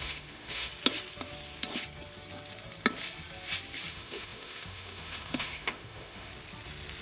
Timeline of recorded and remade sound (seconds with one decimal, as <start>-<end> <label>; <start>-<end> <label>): 0.0-0.7 remade; 0.7-3.9 recorded; 3.9-6.3 remade; 6.3-7.0 recorded